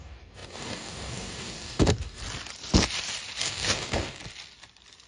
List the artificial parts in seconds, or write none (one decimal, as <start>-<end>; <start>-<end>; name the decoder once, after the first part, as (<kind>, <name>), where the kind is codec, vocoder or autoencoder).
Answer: 0.0-2.2 (codec, DAC); 3.4-4.2